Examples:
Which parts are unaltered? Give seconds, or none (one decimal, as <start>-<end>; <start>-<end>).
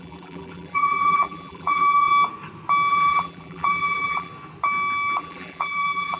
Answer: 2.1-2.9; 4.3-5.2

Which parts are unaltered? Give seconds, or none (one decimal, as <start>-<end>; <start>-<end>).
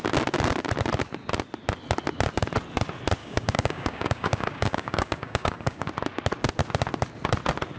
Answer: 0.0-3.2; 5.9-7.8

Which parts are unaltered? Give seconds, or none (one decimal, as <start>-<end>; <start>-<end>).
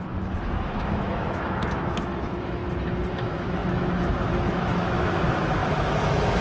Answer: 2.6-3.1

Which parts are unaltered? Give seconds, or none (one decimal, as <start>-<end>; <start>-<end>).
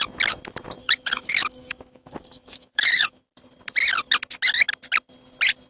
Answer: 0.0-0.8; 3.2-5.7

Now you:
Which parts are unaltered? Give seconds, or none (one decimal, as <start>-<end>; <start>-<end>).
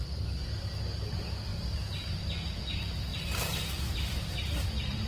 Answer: 0.0-3.1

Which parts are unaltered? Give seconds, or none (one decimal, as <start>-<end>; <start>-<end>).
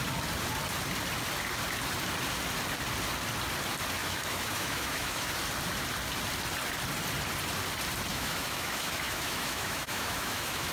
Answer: 0.0-4.0; 5.3-8.1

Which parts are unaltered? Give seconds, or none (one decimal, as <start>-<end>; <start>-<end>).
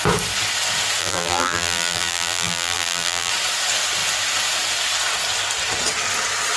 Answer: 0.0-1.0; 3.3-6.6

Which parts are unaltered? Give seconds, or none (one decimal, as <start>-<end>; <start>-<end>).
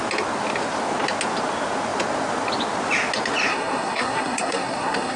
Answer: 0.0-3.5